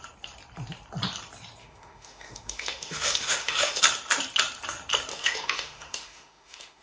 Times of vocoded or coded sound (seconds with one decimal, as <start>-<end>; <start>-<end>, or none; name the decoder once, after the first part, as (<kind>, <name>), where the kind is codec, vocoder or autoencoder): 1.6-3.8 (autoencoder, DAC-VAE); 5.1-6.8